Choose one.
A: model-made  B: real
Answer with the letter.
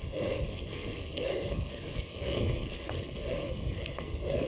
A